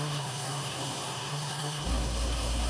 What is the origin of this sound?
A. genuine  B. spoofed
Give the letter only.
B